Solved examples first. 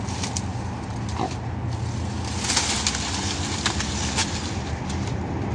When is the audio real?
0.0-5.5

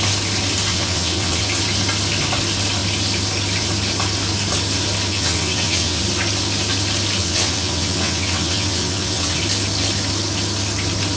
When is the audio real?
0.0-0.7; 1.4-5.1; 6.0-7.2; 9.4-11.2

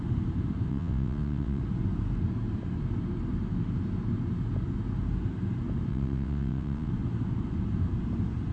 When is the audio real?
0.0-0.7; 1.6-5.9; 6.9-8.5

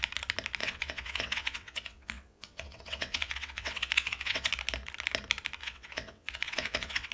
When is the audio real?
0.0-0.6; 4.5-5.6

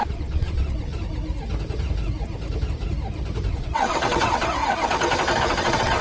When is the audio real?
0.9-3.5; 4.6-5.5

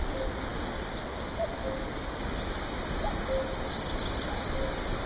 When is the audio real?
0.0-5.1